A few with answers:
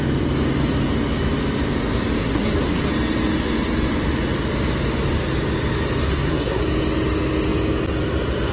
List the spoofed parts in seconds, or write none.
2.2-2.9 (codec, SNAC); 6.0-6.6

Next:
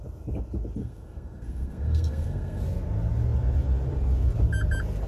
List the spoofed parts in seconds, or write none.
0.8-2.6 (codec, SNAC)